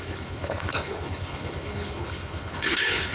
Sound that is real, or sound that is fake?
fake